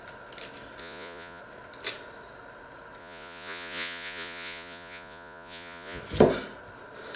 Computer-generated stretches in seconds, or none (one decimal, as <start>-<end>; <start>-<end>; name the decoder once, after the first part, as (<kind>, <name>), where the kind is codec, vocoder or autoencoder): 0.8-1.4 (vocoder, Vocos); 3.0-6.0